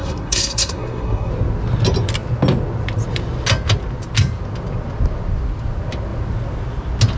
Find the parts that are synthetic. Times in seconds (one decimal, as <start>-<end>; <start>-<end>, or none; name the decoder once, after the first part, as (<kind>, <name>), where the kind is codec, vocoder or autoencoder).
0.0-1.3 (codec, SNAC)